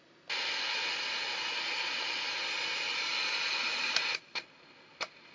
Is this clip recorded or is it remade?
recorded